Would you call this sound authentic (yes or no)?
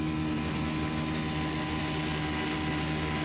yes